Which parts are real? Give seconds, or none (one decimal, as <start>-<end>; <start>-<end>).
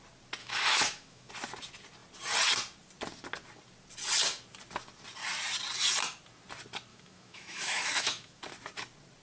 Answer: 0.0-0.4; 1.3-6.9; 8.4-9.2